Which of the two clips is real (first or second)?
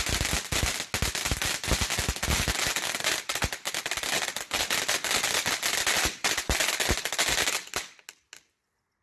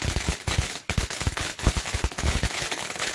first